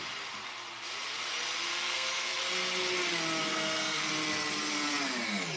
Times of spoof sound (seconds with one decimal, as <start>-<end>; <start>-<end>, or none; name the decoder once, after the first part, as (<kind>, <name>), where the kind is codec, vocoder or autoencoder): 1.7-2.4 (codec, SNAC); 3.5-4.1